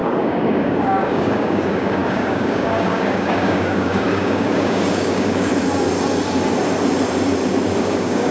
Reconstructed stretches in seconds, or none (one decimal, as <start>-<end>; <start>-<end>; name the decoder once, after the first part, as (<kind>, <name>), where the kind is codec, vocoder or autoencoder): 0.0-5.5 (codec, DAC); 7.8-8.3